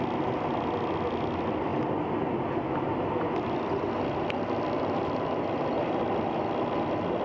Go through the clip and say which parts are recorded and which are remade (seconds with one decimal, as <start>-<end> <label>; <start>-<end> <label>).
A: 0.0-7.2 recorded